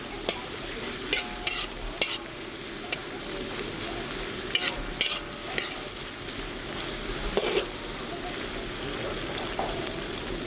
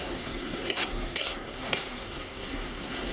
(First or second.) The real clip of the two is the first